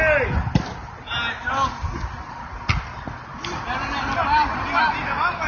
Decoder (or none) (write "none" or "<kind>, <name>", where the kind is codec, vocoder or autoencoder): none